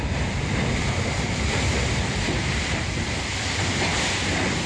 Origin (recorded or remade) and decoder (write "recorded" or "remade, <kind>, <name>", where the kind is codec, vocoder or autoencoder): remade, vocoder, BigVGAN v2